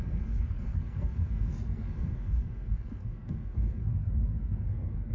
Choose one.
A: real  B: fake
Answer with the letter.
B